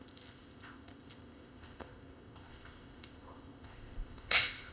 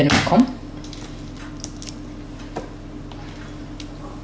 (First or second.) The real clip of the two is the second